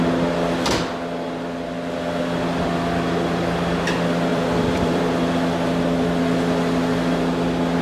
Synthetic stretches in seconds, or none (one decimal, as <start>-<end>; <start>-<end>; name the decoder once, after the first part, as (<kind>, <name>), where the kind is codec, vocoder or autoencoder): 4.3-5.0 (vocoder, BigVGAN v2)